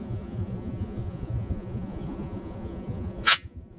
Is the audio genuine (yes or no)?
no